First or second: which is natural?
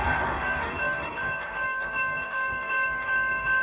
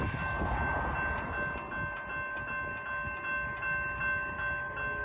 second